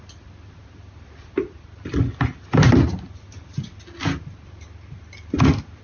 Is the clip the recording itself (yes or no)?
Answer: yes